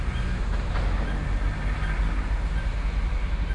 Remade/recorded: recorded